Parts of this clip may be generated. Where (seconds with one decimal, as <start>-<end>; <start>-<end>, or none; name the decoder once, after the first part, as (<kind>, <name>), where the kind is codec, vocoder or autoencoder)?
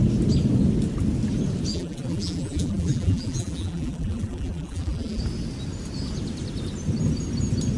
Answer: 1.7-5.2 (vocoder, BigVGAN v2)